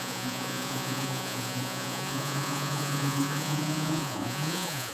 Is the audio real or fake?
fake